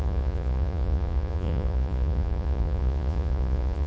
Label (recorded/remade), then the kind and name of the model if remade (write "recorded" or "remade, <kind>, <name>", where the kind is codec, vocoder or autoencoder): remade, vocoder, Vocos